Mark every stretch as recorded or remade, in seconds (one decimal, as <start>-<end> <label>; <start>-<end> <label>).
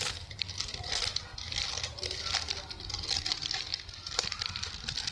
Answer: 0.0-1.3 remade; 1.3-3.2 recorded; 3.2-3.7 remade; 3.7-4.2 recorded; 4.2-5.1 remade